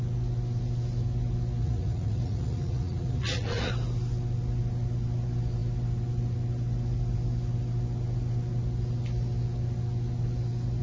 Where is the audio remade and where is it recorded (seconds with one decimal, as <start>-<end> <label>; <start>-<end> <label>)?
0.0-1.6 recorded; 1.6-3.7 remade; 3.7-10.8 recorded